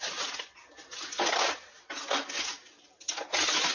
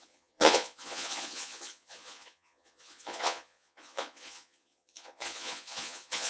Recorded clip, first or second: first